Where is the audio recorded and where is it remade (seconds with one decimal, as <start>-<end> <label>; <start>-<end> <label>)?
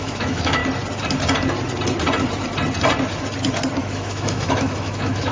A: 0.0-0.6 remade; 0.6-3.8 recorded; 3.8-5.3 remade